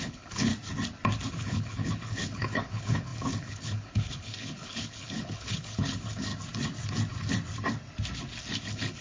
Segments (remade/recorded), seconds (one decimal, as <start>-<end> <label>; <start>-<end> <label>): 0.0-0.5 remade; 0.5-1.3 recorded; 1.3-6.3 remade; 6.3-8.6 recorded; 8.6-9.0 remade